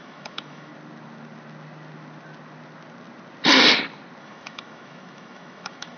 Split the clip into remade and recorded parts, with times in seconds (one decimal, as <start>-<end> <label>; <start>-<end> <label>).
0.0-0.7 remade; 0.7-4.2 recorded; 4.2-6.0 remade